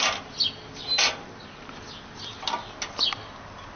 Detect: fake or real real